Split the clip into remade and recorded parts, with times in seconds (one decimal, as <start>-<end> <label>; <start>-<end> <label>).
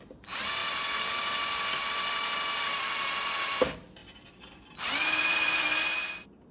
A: 0.0-0.6 recorded; 0.6-1.8 remade; 1.8-4.0 recorded; 4.0-5.8 remade; 5.8-6.5 recorded